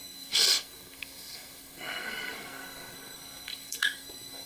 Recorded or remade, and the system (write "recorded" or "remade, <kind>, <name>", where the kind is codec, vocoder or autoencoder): remade, codec, SNAC